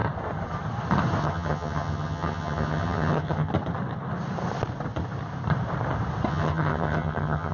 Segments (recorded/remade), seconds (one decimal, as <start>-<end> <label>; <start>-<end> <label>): 0.0-1.2 recorded; 1.2-3.5 remade; 3.5-6.3 recorded; 6.3-7.5 remade